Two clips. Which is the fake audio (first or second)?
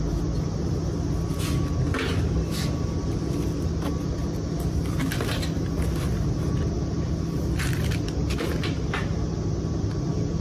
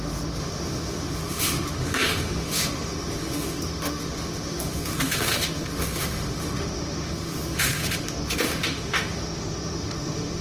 second